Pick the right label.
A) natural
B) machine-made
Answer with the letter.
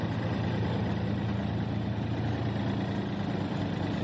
A